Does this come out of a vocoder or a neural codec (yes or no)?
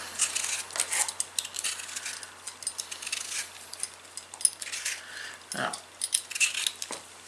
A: no